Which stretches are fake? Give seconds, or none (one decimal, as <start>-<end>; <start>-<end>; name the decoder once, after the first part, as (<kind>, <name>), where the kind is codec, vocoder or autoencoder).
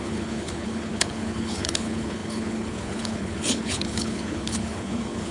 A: 0.0-5.3 (codec, HILCodec)